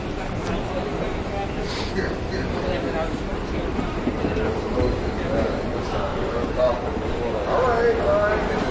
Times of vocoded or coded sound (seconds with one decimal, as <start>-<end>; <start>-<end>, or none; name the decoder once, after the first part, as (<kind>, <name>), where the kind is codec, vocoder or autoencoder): 3.3-4.1 (vocoder, BigVGAN v2); 6.1-7.2

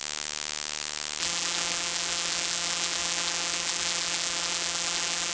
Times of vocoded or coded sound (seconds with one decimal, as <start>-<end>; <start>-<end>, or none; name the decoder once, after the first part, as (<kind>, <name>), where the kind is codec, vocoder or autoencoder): 1.2-5.3 (vocoder, BigVGAN v2)

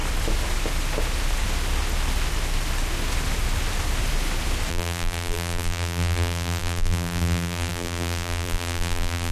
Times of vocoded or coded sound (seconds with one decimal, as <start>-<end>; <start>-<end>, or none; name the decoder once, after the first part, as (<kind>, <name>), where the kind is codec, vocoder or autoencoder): 4.7-9.3 (vocoder, BigVGAN v2)

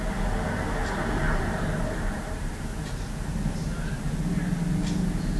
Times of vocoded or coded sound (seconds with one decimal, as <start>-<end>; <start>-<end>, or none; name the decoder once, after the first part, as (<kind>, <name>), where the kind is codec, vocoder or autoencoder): 0.8-4.0 (vocoder, BigVGAN v2)

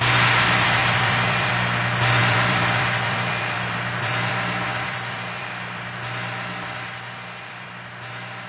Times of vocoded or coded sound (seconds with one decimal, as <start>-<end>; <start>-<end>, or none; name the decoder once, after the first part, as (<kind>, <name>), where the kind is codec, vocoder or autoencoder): 0.8-1.5 (vocoder, BigVGAN v2); 2.2-4.3; 4.7-7.8

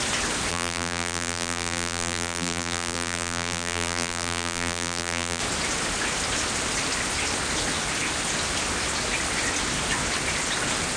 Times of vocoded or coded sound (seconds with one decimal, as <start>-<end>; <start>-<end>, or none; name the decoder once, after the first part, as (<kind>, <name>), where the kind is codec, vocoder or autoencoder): 0.5-5.4 (vocoder, BigVGAN v2)